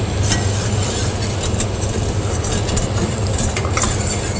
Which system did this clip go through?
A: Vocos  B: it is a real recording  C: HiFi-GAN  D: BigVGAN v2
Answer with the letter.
B